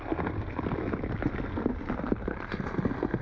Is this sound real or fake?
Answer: real